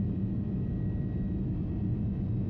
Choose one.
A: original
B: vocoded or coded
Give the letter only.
A